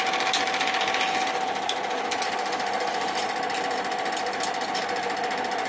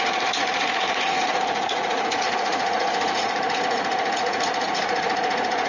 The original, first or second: first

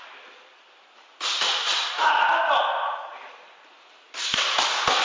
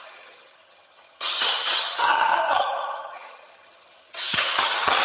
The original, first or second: first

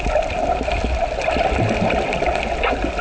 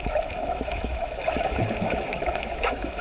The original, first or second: first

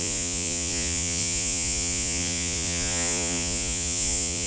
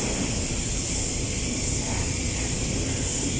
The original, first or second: second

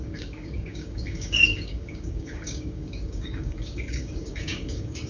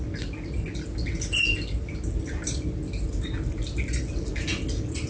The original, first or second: second